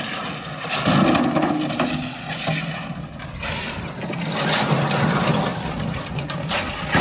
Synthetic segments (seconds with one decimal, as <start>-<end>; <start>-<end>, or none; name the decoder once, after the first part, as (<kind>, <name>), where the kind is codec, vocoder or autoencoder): 5.5-6.1 (vocoder, BigVGAN v2)